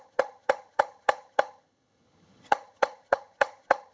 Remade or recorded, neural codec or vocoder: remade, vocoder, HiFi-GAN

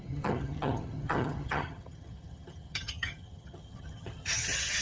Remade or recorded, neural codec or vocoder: remade, vocoder, HiFi-GAN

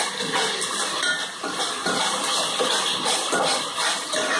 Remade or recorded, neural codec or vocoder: recorded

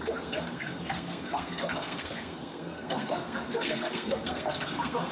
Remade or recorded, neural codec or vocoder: remade, codec, SNAC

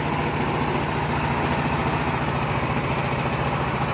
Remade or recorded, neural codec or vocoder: recorded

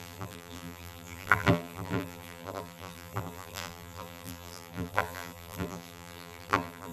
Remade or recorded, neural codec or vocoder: remade, vocoder, BigVGAN v2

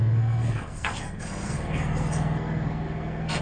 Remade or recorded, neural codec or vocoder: remade, codec, SNAC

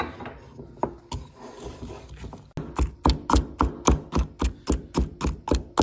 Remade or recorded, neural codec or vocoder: recorded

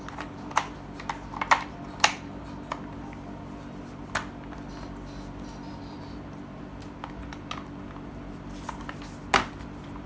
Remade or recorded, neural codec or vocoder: recorded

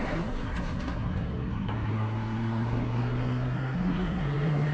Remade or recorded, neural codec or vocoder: remade, codec, SNAC